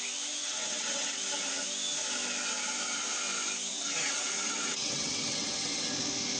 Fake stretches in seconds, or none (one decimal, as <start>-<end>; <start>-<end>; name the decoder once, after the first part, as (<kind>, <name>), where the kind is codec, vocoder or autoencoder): 0.4-1.2 (vocoder, WaveNeXt); 3.7-5.9